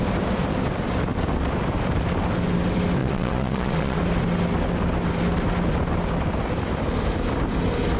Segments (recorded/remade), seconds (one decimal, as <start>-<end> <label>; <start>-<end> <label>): 0.0-3.0 recorded; 3.0-4.0 remade; 4.0-8.0 recorded